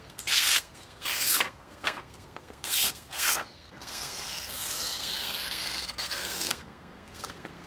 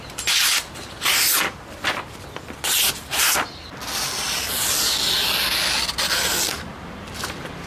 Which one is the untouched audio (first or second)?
second